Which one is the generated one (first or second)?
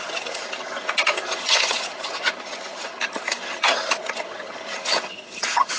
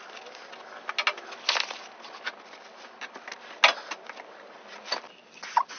first